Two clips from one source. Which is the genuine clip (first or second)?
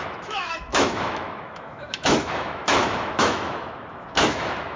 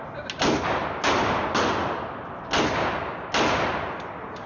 second